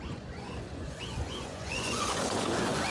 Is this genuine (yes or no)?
no